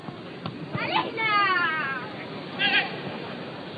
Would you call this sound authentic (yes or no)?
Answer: yes